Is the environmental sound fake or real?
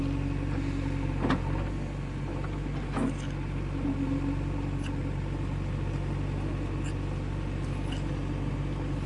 real